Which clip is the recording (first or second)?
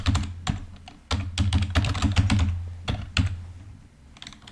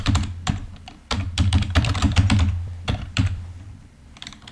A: first